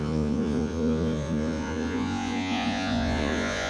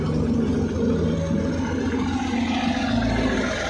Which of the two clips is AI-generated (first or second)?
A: first